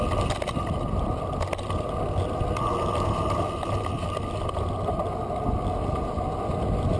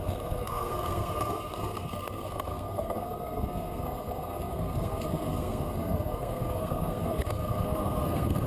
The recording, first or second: first